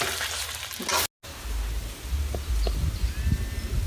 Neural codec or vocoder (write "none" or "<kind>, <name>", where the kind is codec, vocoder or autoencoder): none